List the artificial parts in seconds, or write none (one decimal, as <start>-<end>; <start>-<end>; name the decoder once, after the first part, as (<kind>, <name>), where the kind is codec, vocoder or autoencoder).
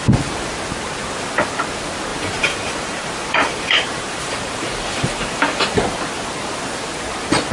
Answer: 2.1-5.8 (vocoder, BigVGAN v2)